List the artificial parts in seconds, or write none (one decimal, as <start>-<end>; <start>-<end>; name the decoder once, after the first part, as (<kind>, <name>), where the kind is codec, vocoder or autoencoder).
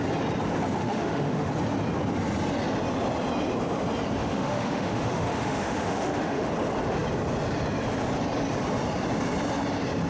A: 0.8-1.5 (autoencoder, DAC-VAE); 4.2-6.5